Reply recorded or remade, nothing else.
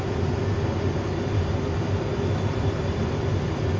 recorded